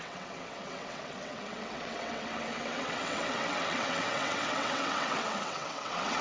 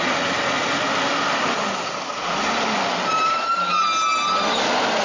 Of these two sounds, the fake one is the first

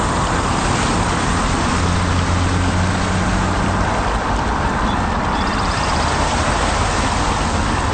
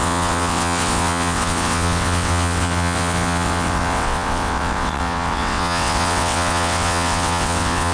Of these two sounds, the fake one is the second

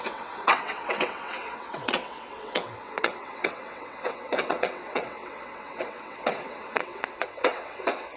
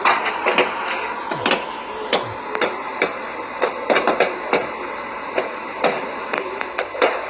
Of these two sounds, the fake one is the first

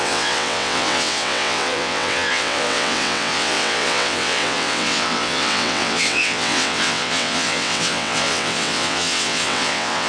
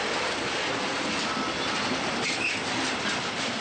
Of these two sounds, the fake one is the first